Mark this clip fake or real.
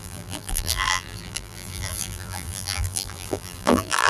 fake